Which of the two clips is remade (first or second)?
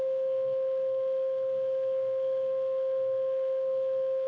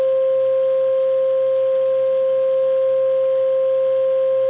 first